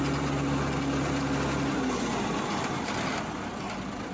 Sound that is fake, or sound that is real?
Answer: real